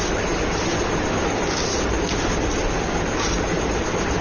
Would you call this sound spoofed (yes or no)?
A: no